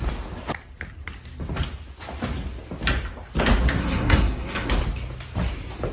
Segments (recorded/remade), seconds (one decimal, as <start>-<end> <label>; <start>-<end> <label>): 0.0-3.8 recorded; 3.8-4.7 remade; 4.7-5.9 recorded